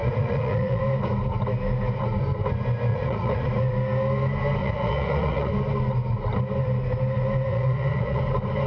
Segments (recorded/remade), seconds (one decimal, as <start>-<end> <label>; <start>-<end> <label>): 0.0-0.8 remade; 0.8-2.9 recorded; 2.9-3.5 remade; 3.5-4.6 recorded; 4.6-5.5 remade; 5.5-7.5 recorded; 7.5-8.2 remade; 8.2-8.7 recorded

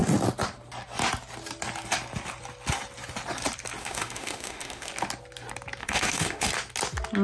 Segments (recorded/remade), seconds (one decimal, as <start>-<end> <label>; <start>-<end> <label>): 0.0-3.8 recorded; 3.8-4.9 remade; 4.9-5.8 recorded; 5.8-6.5 remade; 6.5-7.2 recorded